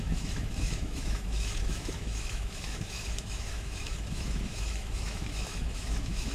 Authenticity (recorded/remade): remade